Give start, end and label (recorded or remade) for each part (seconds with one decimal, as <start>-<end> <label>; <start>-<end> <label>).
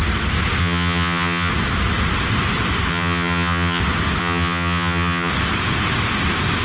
0.0-0.6 recorded; 0.6-1.5 remade; 1.5-2.9 recorded; 2.9-3.8 remade; 3.8-4.2 recorded; 4.2-5.3 remade; 5.3-6.6 recorded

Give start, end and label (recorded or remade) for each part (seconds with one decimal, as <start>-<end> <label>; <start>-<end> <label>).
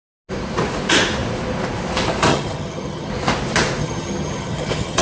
0.0-2.3 recorded; 2.3-3.1 remade; 3.1-3.8 recorded; 3.8-5.0 remade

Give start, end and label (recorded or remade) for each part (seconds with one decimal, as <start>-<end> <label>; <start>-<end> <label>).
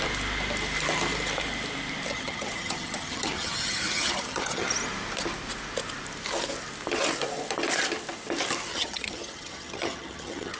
0.0-2.1 recorded; 2.1-4.7 remade; 4.7-8.7 recorded; 8.7-10.6 remade